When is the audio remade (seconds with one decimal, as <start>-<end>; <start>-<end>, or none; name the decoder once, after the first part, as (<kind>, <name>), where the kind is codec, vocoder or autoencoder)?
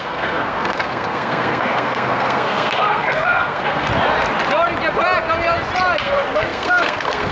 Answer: 0.0-3.9 (codec, SNAC); 6.0-7.3